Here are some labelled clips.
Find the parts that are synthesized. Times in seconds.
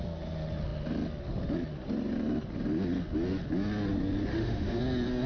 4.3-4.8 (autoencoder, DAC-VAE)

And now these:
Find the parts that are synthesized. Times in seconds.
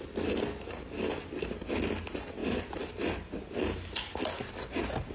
none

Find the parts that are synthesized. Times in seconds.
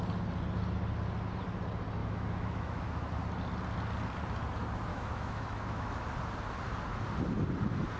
2.0-3.1 (autoencoder, DAC-VAE); 4.9-6.1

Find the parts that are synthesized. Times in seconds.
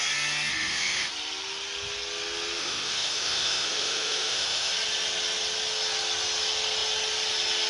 0.5-1.1 (autoencoder, DAC-VAE); 2.6-4.7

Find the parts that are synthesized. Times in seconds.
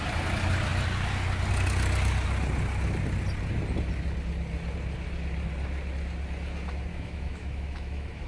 6.9-8.3 (autoencoder, DAC-VAE)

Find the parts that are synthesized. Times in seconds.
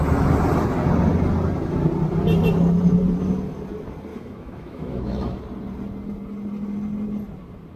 4.1-5.4 (autoencoder, DAC-VAE)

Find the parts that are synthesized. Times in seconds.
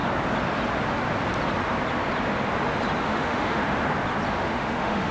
3.0-3.6 (autoencoder, DAC-VAE); 4.3-5.1